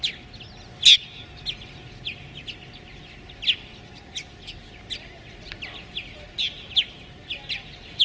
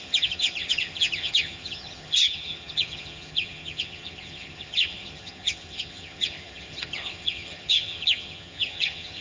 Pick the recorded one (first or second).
first